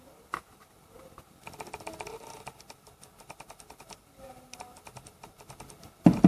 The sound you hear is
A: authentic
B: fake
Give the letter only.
B